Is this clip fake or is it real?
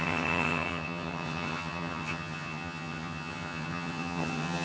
fake